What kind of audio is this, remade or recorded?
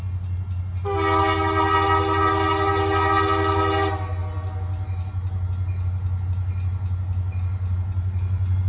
recorded